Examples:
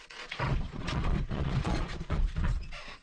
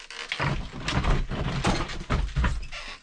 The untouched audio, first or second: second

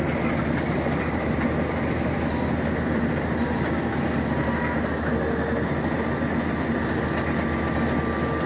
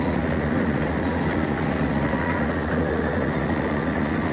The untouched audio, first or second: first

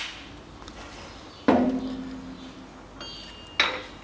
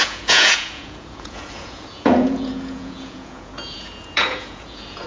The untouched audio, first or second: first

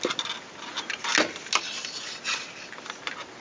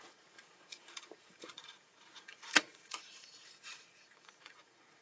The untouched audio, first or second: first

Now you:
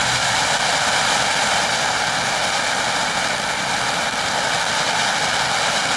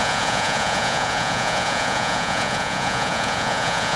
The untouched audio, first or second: first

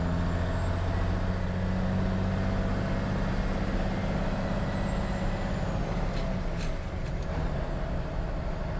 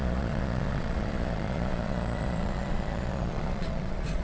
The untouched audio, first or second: first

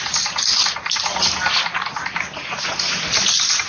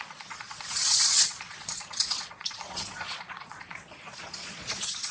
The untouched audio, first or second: first